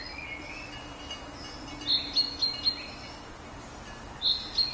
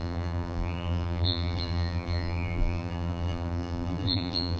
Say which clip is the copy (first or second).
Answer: second